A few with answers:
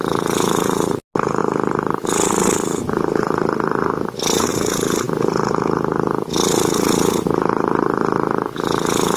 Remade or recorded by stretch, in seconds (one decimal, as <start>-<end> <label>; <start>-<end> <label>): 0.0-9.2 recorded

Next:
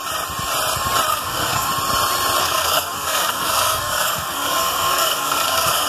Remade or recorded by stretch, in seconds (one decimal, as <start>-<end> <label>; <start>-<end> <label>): 0.0-1.1 recorded; 1.1-1.7 remade; 1.7-2.4 recorded; 2.4-5.9 remade

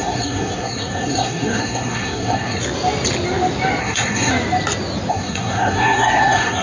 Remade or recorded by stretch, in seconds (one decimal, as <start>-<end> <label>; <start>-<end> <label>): 0.0-2.6 remade; 2.6-3.8 recorded; 3.8-4.3 remade; 4.3-5.1 recorded; 5.1-6.6 remade

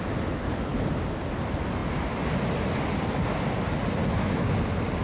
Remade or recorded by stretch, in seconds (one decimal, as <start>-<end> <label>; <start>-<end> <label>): 0.0-4.0 recorded; 4.0-4.6 remade; 4.6-5.0 recorded

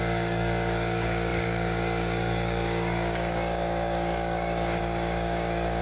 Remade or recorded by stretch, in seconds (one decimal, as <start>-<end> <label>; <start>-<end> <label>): 0.0-5.8 remade

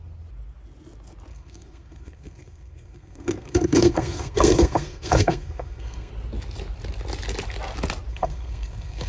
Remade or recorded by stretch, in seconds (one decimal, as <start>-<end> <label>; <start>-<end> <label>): 0.0-1.3 recorded; 1.3-6.1 remade; 6.1-8.1 recorded; 8.1-9.1 remade